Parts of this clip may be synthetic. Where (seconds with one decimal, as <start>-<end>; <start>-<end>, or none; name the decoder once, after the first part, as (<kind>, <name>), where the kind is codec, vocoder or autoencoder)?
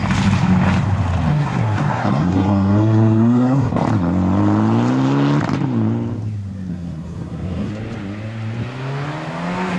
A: 1.3-3.7 (codec, SNAC); 6.7-7.7